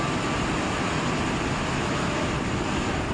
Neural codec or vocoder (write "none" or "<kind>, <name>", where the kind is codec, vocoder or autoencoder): none